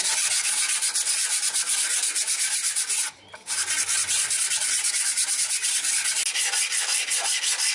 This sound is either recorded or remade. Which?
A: recorded